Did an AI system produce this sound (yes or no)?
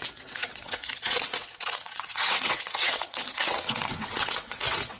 yes